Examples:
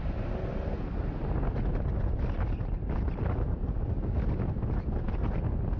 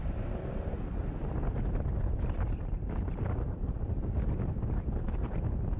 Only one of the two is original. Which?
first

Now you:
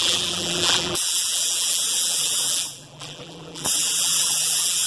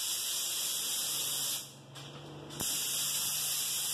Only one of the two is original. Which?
second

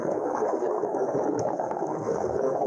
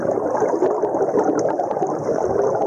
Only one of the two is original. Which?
second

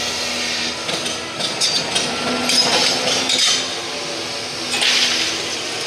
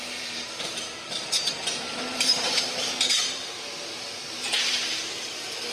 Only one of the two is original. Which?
first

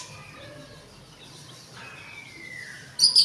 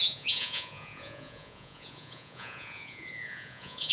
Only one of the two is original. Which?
first